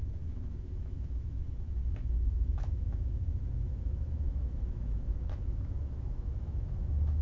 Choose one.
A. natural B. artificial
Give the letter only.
B